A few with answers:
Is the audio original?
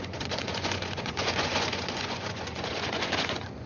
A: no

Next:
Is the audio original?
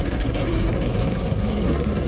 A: no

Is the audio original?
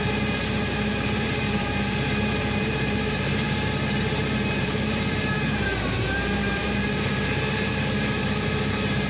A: no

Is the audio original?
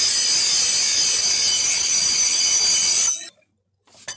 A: yes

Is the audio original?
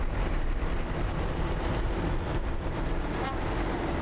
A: no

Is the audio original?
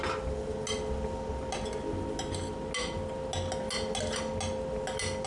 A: yes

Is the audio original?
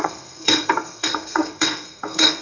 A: no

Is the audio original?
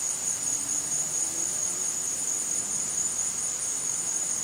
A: no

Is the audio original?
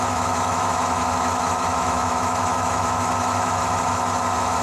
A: no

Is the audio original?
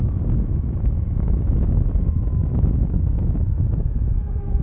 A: no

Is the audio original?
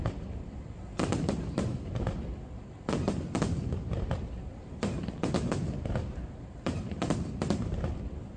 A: yes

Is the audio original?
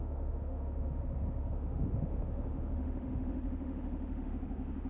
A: no